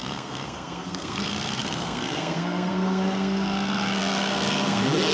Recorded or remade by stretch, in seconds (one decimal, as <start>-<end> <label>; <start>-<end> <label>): 0.0-5.1 remade